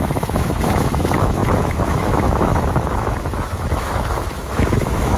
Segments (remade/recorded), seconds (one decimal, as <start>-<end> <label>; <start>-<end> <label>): 0.0-5.2 remade